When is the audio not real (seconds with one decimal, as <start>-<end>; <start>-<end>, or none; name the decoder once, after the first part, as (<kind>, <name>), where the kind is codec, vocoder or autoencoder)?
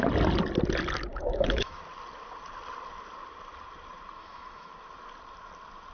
1.1-1.8 (autoencoder, DAC-VAE); 4.2-4.7